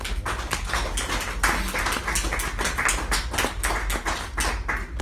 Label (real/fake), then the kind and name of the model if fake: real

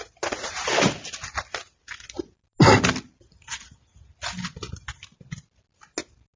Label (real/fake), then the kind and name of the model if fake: real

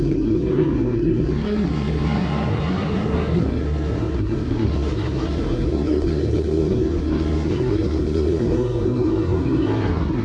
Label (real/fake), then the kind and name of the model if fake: fake, codec, SNAC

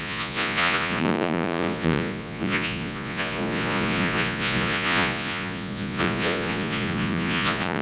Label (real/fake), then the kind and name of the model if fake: fake, vocoder, Vocos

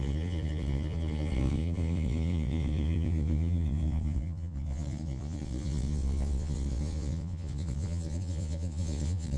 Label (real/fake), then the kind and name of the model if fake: fake, vocoder, Vocos